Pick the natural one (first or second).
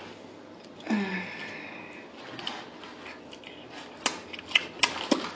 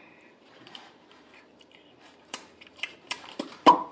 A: first